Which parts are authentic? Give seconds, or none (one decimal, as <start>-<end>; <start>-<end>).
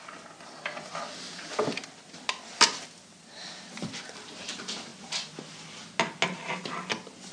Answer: 0.0-7.3